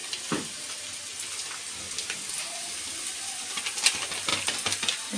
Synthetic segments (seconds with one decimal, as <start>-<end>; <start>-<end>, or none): none